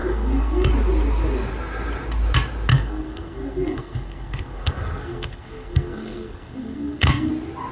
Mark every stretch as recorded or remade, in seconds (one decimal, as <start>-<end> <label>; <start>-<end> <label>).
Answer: 0.0-0.7 remade; 0.7-2.7 recorded; 2.7-7.3 remade; 7.3-7.7 recorded